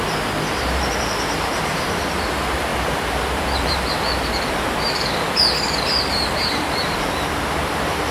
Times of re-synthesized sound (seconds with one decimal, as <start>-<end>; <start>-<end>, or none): 0.0-8.1